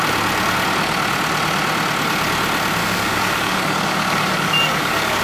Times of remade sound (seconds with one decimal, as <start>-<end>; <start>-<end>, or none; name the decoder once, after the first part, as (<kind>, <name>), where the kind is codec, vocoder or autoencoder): 2.8-5.2 (codec, DAC)